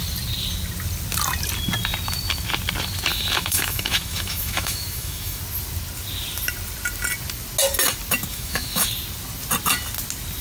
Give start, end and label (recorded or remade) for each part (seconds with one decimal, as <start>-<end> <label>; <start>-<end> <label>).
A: 0.0-3.1 recorded; 3.1-5.4 remade; 5.4-8.3 recorded; 8.3-8.9 remade; 8.9-10.4 recorded